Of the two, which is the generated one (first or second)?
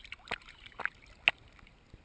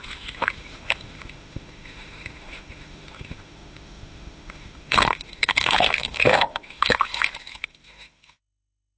second